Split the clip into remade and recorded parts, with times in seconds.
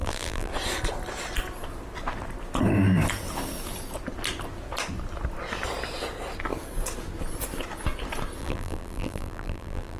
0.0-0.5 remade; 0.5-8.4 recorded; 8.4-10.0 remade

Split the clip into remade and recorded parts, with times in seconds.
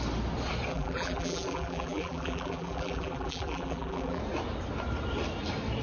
0.0-0.7 recorded; 0.7-4.2 remade; 4.2-5.8 recorded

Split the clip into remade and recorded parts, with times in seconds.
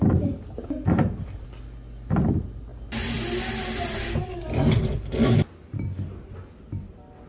0.0-7.3 recorded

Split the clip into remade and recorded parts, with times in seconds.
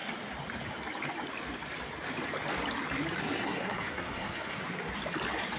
0.0-3.2 recorded; 3.2-4.6 remade; 4.6-5.6 recorded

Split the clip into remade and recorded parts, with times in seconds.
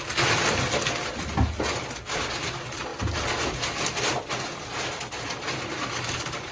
0.0-6.5 recorded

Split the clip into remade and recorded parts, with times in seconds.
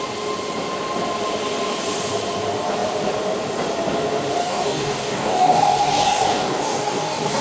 0.0-4.4 recorded; 4.4-7.4 remade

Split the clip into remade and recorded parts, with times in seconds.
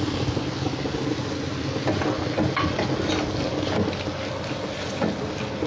0.0-5.7 recorded